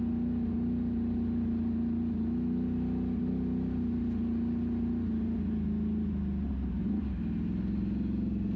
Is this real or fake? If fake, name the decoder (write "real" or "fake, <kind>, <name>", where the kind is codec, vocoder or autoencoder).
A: real